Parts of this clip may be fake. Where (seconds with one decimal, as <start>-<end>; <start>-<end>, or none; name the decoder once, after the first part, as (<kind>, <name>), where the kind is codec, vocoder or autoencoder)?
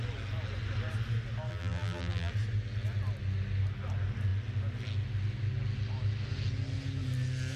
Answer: 1.5-2.3 (vocoder, BigVGAN v2)